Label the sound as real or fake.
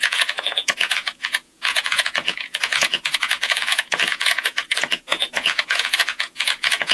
fake